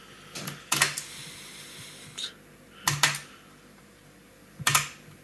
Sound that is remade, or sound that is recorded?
recorded